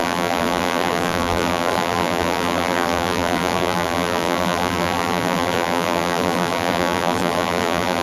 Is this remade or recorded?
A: remade